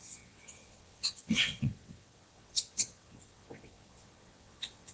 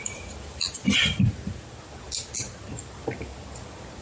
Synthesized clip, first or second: first